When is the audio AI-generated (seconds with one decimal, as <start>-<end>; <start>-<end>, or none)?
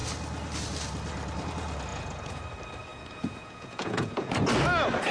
1.9-2.4; 2.9-4.3